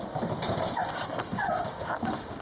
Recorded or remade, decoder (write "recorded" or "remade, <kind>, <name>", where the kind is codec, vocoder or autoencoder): recorded